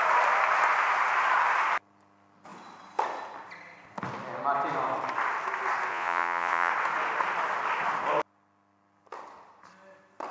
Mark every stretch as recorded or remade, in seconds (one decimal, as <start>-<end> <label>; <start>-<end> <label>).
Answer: 0.0-5.9 recorded; 5.9-6.7 remade; 6.7-10.3 recorded